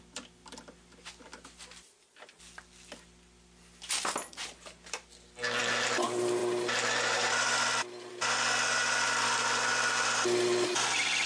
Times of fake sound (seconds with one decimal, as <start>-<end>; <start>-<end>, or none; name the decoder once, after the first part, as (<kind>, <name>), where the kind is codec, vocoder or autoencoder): none